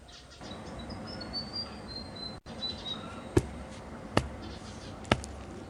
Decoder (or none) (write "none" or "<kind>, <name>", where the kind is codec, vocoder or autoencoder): none